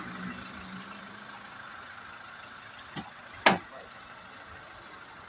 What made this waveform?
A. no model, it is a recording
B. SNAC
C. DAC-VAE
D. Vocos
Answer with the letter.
A